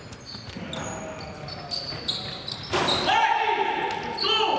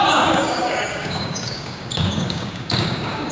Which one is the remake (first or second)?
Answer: second